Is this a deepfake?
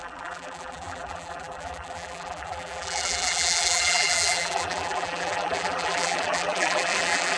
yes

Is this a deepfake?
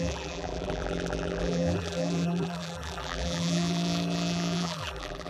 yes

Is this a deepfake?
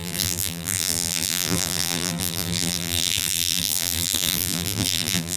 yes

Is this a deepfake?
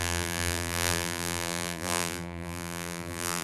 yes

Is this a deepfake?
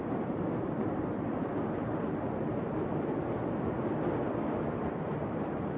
yes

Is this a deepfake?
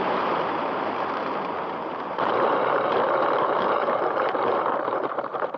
yes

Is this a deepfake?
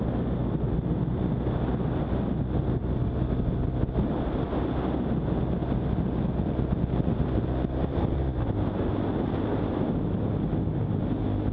no